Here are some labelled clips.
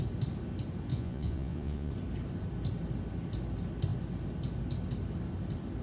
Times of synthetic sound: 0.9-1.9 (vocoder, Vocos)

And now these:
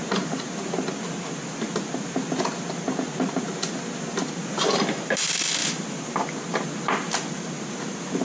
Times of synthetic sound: 5.6-6.2 (vocoder, BigVGAN v2)

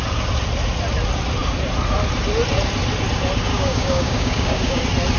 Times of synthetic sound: 3.5-4.8 (codec, DAC)

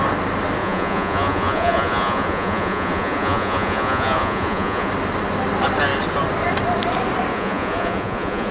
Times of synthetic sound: 0.6-4.9 (vocoder, Vocos); 7.3-8.5

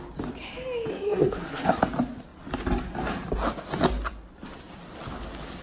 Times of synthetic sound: 0.9-1.8 (codec, SNAC)

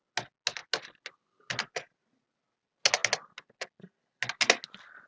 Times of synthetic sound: none

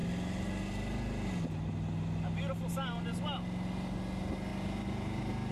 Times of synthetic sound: none